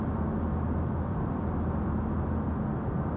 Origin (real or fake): real